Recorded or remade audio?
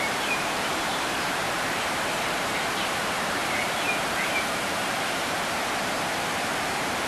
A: remade